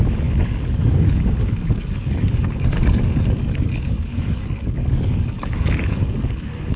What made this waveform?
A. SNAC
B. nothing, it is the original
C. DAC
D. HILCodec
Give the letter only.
C